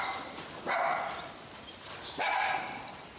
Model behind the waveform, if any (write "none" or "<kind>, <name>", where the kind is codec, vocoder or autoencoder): none